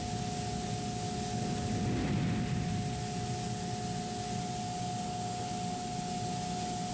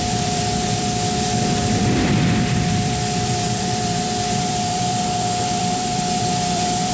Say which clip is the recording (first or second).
first